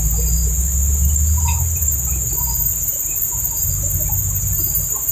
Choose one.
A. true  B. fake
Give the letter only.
A